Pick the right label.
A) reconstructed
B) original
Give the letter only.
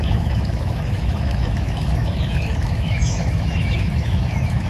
A